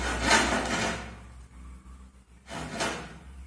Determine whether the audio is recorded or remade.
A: recorded